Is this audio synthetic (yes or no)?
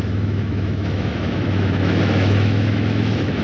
yes